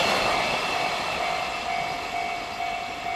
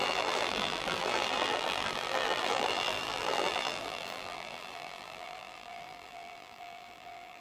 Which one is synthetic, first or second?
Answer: second